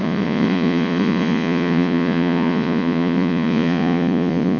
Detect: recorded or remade remade